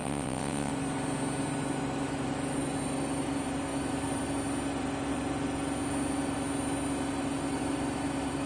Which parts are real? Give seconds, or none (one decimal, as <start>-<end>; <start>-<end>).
0.7-8.5